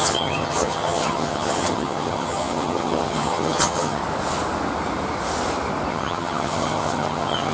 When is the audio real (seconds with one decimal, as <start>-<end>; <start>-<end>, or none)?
4.0-5.9